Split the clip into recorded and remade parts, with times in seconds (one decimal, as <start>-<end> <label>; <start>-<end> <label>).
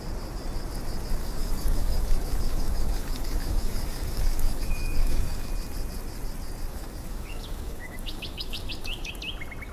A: 0.0-1.2 recorded; 1.2-5.5 remade; 5.5-6.7 recorded; 6.7-9.1 remade; 9.1-9.7 recorded